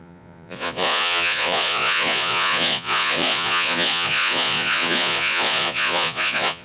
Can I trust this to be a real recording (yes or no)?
no